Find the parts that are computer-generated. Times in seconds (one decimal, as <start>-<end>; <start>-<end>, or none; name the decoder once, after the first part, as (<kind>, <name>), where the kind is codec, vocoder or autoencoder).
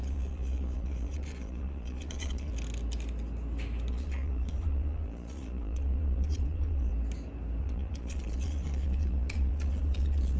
0.0-2.5 (vocoder, Vocos); 3.9-6.9; 7.6-10.4